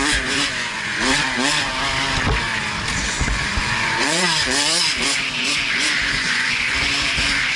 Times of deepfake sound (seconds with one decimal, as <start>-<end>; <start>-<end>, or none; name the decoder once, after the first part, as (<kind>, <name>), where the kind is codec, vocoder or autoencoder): 0.0-1.7 (vocoder, Vocos); 3.0-7.6